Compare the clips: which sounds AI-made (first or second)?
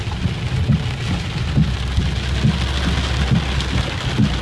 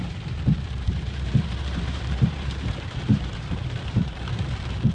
second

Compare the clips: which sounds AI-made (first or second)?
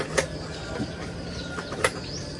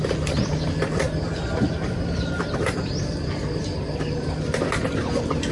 second